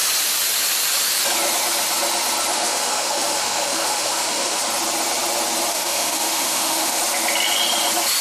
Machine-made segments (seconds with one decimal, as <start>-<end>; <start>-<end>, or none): 2.5-4.6; 5.7-7.0